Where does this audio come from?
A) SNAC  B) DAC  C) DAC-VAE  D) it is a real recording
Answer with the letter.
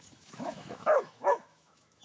C